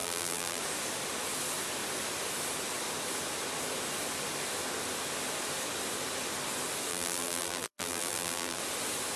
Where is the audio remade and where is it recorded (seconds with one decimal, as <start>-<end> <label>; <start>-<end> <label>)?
0.0-0.6 remade; 0.6-6.9 recorded; 6.9-8.6 remade; 8.6-9.2 recorded

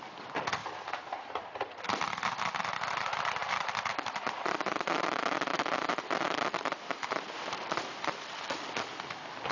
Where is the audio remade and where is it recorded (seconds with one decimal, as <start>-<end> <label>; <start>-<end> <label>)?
0.0-0.6 recorded; 0.6-1.5 remade; 1.5-3.4 recorded; 3.4-8.4 remade; 8.4-9.5 recorded

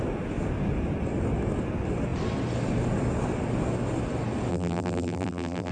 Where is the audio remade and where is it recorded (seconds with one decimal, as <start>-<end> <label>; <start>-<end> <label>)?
0.0-4.5 recorded; 4.5-5.7 remade